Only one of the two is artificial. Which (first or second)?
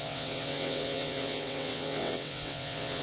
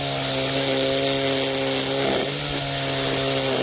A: first